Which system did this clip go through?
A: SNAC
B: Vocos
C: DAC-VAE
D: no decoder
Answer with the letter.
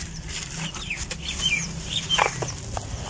D